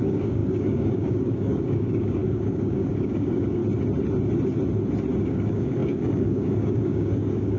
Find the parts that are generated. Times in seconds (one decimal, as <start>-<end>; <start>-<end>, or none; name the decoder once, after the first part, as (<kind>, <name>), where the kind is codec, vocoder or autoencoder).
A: 0.0-3.6 (codec, DAC); 5.2-7.6